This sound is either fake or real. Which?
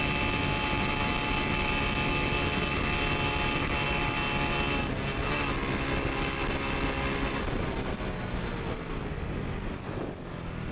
real